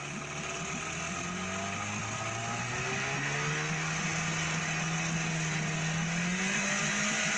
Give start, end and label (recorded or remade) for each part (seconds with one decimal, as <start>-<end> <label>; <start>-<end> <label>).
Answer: 0.0-7.4 recorded